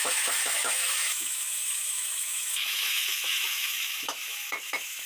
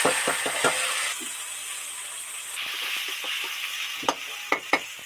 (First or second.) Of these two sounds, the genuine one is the second